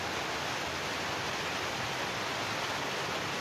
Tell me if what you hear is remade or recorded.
recorded